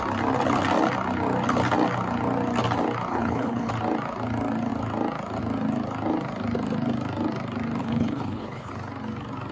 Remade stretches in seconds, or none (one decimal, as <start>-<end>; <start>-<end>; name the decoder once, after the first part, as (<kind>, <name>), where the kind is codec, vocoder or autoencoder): 3.1-3.7 (codec, HILCodec); 7.8-8.7